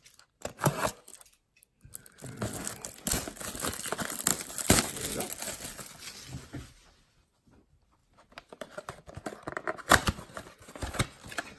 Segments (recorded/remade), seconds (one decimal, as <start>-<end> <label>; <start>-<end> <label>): 0.0-4.3 recorded; 4.3-5.2 remade; 5.2-8.0 recorded; 8.0-10.7 remade; 10.7-11.6 recorded